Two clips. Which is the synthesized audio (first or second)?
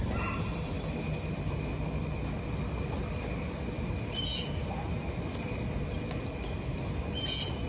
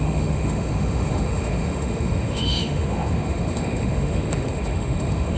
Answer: second